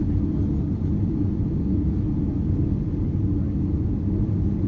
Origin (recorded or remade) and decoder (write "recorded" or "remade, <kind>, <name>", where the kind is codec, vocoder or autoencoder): recorded